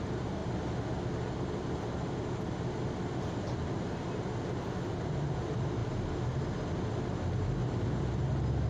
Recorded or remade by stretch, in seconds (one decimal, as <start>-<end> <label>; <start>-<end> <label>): 0.0-8.7 recorded